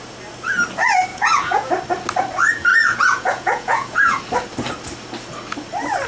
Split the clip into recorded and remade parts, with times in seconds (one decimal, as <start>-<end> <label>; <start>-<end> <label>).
0.0-1.1 recorded; 1.1-1.7 remade; 1.7-2.7 recorded; 2.7-4.2 remade; 4.2-6.1 recorded